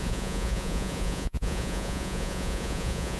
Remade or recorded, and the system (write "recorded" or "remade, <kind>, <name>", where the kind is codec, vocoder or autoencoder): remade, vocoder, Vocos